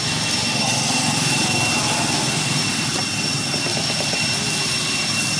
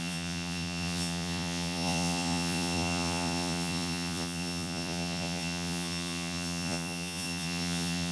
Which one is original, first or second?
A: first